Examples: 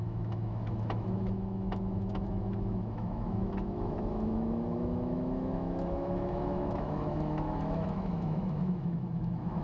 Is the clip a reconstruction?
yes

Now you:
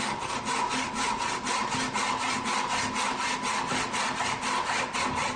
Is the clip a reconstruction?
no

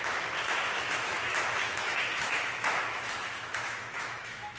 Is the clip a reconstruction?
yes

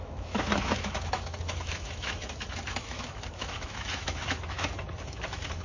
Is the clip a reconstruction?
yes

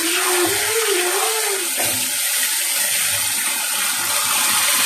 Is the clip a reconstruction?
no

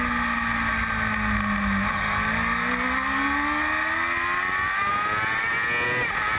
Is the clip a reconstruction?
no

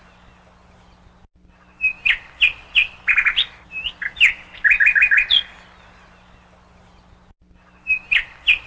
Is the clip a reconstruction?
no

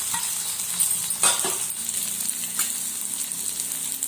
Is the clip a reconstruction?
no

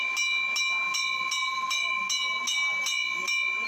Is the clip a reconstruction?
no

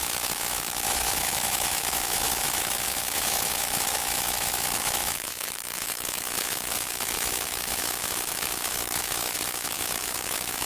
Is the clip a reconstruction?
yes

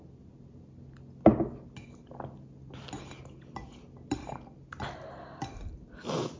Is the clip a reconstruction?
no